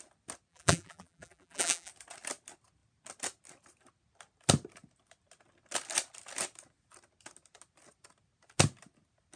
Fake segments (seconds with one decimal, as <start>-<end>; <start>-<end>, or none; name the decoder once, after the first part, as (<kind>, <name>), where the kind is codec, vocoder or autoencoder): 0.5-1.9 (vocoder, BigVGAN v2)